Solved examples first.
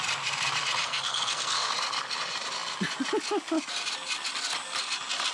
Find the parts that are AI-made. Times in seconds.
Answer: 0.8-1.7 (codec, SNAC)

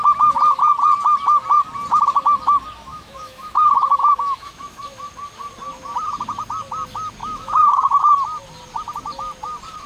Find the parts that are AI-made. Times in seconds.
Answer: 2.9-5.1 (autoencoder, DAC-VAE); 7.2-8.0

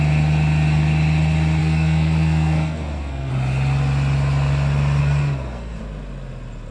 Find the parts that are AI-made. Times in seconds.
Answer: 1.6-3.3 (codec, SNAC); 5.0-5.8

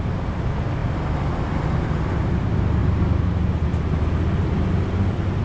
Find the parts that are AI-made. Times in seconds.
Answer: none

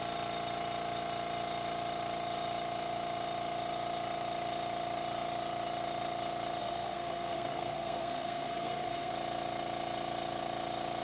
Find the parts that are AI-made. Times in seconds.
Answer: 6.6-9.1 (codec, SNAC)